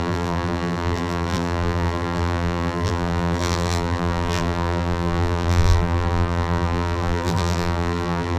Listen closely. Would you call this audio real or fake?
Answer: fake